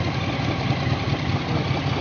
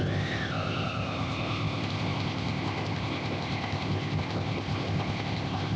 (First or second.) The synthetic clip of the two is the second